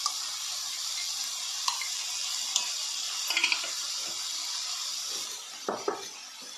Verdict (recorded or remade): recorded